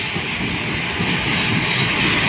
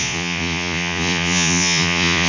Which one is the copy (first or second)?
second